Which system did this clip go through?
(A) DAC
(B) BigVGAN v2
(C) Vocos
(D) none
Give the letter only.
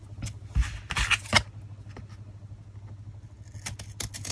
D